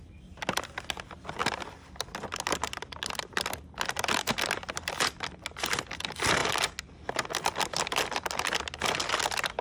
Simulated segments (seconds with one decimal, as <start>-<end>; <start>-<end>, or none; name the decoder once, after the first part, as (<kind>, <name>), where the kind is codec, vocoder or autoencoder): none